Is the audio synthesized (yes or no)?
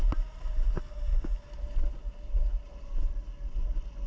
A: no